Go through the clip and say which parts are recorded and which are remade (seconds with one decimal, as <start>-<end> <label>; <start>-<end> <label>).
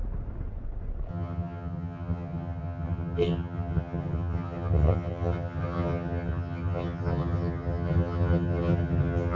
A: 0.0-1.1 recorded; 1.1-9.4 remade